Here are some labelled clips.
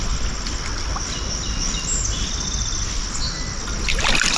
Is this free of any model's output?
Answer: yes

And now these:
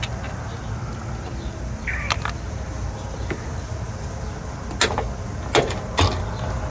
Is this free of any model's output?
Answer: yes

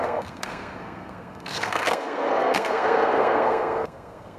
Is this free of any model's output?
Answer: no